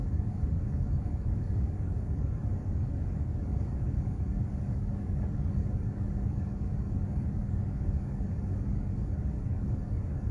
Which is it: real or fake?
fake